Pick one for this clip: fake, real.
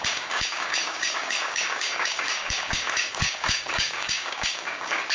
fake